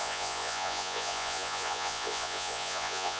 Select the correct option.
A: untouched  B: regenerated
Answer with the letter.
B